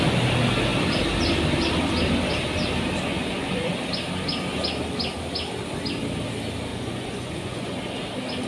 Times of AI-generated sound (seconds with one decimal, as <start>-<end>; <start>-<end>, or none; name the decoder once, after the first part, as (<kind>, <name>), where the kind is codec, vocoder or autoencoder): 3.1-3.7 (vocoder, Vocos); 6.7-8.0